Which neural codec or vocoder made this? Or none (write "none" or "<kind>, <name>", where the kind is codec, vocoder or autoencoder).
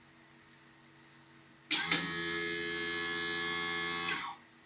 none